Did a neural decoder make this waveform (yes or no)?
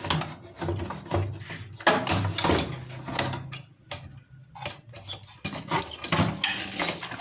no